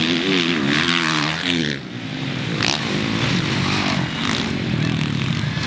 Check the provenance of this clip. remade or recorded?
recorded